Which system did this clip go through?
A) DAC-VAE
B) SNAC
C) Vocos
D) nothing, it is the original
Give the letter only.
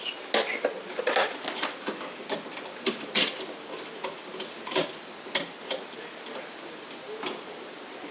D